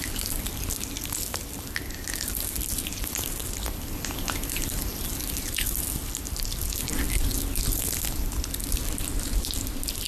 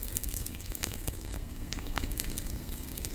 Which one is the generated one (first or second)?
second